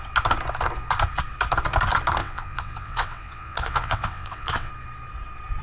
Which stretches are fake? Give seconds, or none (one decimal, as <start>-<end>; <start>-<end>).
2.2-4.7